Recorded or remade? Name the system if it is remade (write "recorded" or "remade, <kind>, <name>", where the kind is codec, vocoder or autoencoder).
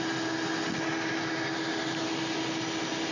recorded